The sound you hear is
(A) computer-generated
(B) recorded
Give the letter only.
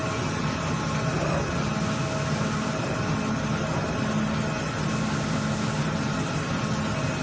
B